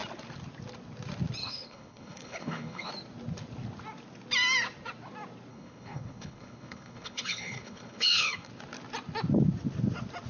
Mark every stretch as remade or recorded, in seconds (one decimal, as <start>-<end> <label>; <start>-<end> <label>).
0.0-1.4 recorded; 1.4-2.9 remade; 2.9-5.5 recorded; 5.5-8.5 remade; 8.5-10.3 recorded